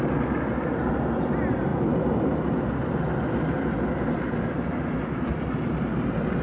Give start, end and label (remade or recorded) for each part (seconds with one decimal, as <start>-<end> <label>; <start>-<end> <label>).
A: 0.0-6.4 recorded